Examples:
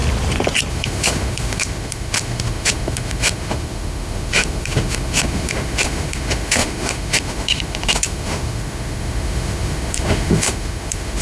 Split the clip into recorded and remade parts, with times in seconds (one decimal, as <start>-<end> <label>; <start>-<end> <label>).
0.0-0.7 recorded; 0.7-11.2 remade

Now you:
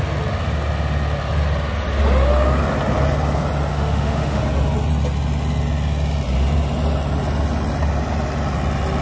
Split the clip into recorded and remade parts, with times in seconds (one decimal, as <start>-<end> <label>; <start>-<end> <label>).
0.0-3.7 recorded; 3.7-4.4 remade; 4.4-9.0 recorded

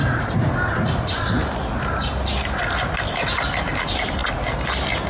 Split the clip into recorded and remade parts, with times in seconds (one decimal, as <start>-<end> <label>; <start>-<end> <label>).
0.0-5.1 recorded

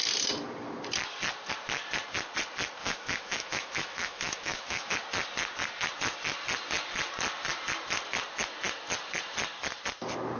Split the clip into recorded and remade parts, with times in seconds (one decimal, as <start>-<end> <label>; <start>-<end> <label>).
0.0-2.8 recorded; 2.8-4.9 remade; 4.9-10.4 recorded